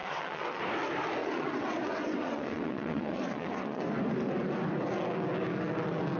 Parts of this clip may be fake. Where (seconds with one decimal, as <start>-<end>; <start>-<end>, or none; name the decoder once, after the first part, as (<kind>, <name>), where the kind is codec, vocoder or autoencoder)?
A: 0.0-0.6 (vocoder, WaveNeXt); 1.2-3.8